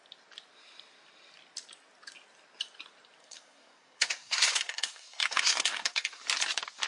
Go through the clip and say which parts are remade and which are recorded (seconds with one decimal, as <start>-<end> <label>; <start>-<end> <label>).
0.0-3.2 recorded; 3.2-6.2 remade; 6.2-6.9 recorded